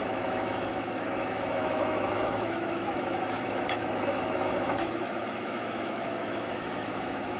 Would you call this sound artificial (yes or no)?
yes